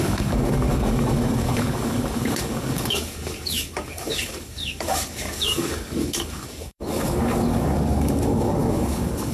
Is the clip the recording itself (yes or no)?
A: no